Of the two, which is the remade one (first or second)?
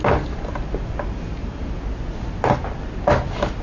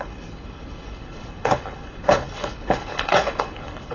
second